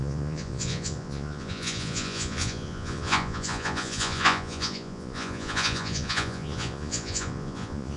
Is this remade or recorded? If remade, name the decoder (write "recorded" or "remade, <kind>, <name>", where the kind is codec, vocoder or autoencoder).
remade, vocoder, Vocos